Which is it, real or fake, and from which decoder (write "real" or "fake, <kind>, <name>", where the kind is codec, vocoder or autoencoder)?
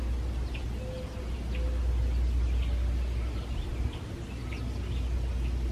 real